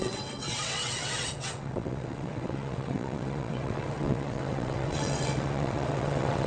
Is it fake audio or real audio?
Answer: fake